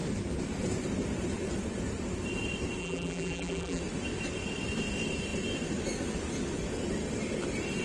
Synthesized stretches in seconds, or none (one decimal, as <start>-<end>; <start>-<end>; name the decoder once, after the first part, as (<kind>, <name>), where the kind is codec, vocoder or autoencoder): 2.8-3.8 (vocoder, BigVGAN v2)